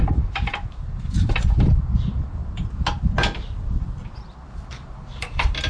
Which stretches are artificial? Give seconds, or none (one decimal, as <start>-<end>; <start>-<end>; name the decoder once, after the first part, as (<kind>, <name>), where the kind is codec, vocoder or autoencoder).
0.0-2.4 (vocoder, BigVGAN v2); 4.4-5.7